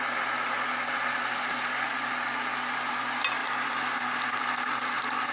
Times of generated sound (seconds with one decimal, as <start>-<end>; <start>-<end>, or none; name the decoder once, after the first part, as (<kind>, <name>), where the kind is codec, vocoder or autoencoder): none